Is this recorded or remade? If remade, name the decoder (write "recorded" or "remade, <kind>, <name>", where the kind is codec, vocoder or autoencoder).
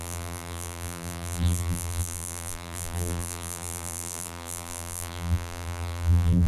remade, vocoder, BigVGAN v2